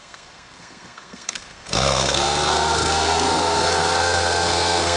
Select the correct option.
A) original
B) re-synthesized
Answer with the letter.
B